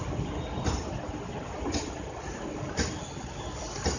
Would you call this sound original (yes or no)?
yes